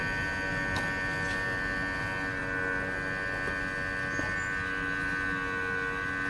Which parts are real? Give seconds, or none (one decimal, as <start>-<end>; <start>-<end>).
0.0-6.3